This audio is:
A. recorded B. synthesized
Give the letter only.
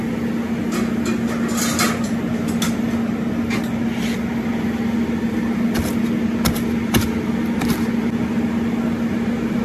A